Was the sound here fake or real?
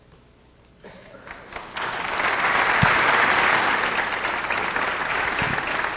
real